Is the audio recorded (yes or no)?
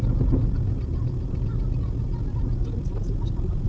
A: yes